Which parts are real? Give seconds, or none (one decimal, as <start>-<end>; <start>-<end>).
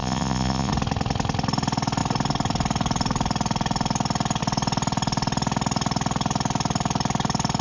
0.7-7.6